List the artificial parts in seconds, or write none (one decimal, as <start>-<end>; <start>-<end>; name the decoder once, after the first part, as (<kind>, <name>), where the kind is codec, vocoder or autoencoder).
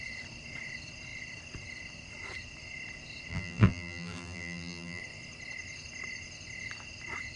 3.3-5.0 (vocoder, BigVGAN v2)